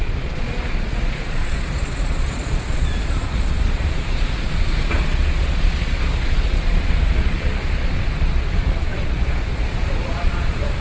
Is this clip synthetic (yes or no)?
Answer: yes